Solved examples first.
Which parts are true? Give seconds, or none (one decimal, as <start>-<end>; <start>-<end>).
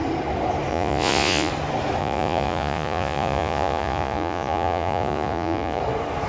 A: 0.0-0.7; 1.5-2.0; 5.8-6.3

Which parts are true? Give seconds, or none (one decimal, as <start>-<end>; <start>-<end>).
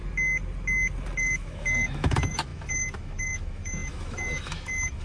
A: 0.0-1.2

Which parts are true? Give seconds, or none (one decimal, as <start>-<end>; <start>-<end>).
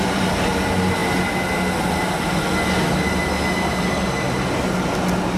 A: 0.0-5.4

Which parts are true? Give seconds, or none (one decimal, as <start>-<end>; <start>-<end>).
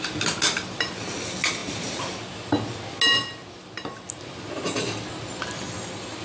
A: 0.0-6.2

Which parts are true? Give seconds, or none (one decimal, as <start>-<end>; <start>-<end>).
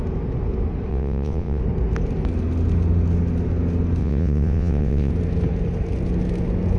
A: 0.0-0.9; 1.6-4.0; 5.1-6.8